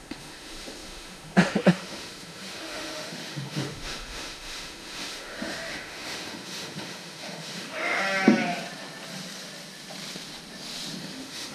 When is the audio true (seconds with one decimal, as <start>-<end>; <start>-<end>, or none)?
8.0-11.0